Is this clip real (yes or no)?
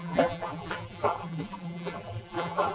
no